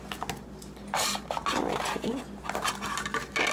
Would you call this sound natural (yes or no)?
yes